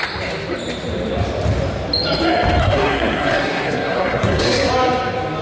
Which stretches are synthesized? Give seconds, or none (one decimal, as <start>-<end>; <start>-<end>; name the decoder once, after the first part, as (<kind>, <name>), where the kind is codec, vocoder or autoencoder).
2.6-4.7 (codec, SNAC)